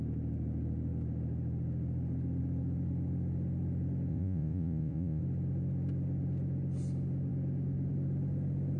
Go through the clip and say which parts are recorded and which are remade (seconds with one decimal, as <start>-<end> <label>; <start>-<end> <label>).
0.0-4.1 recorded; 4.1-5.2 remade; 5.2-8.8 recorded